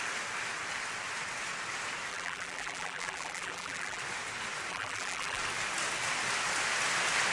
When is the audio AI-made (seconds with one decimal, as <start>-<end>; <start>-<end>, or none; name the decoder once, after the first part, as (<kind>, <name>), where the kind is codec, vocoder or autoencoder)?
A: 2.1-4.0 (vocoder, BigVGAN v2); 4.7-5.4